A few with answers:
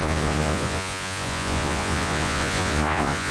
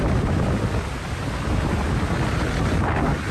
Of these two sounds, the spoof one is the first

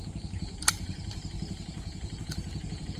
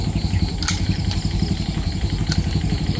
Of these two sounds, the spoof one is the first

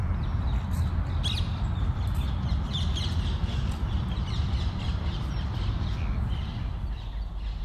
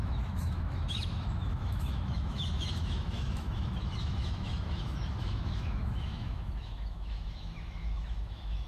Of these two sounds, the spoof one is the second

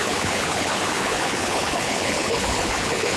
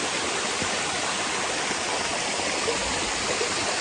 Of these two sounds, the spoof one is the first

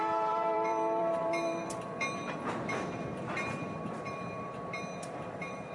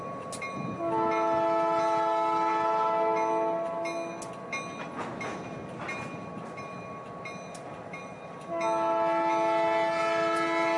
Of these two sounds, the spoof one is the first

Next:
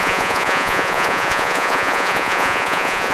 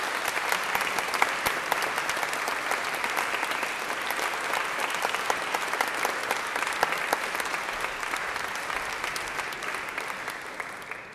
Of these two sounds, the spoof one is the first